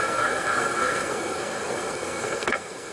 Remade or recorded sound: remade